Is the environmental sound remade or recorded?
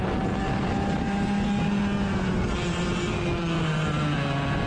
recorded